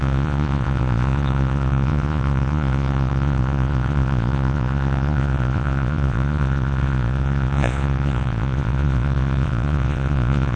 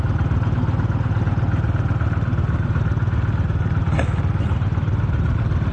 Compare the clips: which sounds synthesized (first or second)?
first